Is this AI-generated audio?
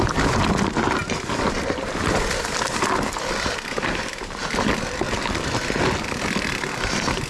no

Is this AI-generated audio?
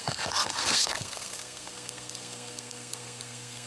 yes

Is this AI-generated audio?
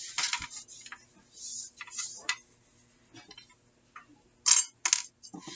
no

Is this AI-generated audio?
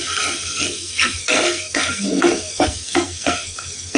yes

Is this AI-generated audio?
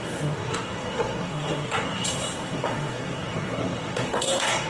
yes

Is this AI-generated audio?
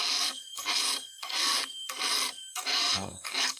yes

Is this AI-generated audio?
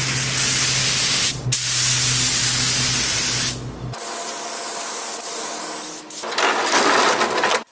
no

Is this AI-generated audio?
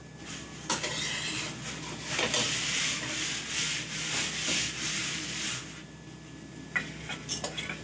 no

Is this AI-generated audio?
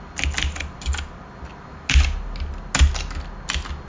no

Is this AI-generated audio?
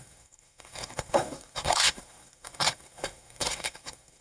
yes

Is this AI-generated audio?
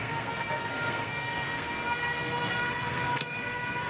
yes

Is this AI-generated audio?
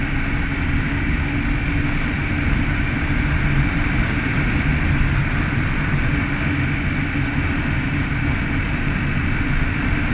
no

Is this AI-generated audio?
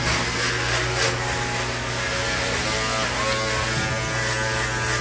no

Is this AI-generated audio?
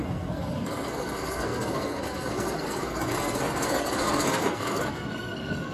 yes